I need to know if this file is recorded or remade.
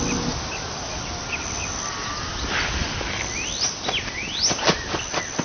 recorded